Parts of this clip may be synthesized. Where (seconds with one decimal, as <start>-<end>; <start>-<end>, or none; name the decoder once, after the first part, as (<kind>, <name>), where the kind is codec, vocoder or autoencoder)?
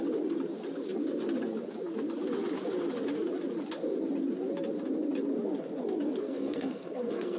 6.2-7.4 (codec, SNAC)